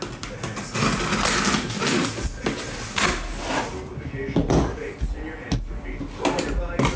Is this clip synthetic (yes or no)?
no